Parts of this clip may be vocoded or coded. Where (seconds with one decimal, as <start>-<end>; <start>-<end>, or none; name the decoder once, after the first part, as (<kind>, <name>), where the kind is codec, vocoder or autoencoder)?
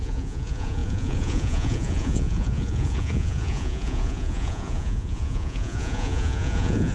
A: 0.0-6.9 (vocoder, Vocos)